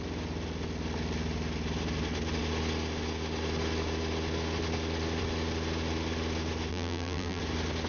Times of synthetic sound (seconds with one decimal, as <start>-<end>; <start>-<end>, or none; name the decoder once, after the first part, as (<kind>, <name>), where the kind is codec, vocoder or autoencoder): 6.7-7.4 (vocoder, BigVGAN v2)